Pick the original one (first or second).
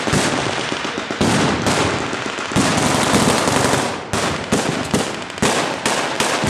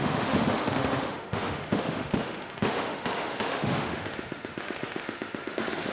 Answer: first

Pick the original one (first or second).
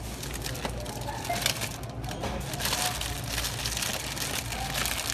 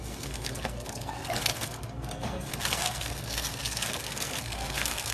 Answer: first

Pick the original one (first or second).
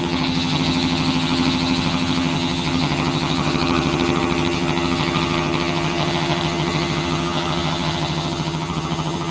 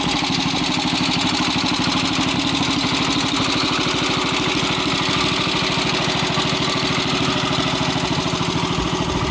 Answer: second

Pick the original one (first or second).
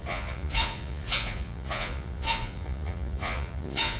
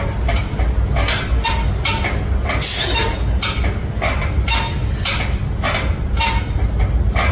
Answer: second